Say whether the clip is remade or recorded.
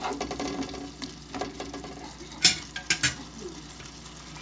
recorded